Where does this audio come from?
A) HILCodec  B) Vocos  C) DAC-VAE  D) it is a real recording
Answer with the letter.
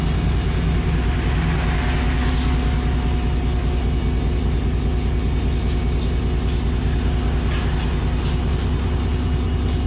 D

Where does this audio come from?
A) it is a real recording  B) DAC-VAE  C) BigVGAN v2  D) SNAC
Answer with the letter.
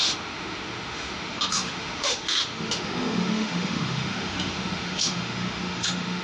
B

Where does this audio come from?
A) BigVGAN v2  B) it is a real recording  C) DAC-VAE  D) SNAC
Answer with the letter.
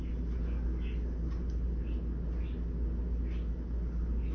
B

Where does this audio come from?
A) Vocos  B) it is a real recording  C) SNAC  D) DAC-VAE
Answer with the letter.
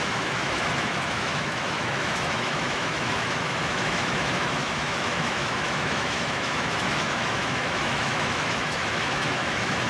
D